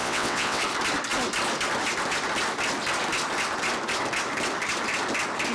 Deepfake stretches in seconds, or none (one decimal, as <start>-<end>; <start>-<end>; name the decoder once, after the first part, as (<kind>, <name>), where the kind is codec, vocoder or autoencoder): 0.0-0.6 (vocoder, WaveNeXt)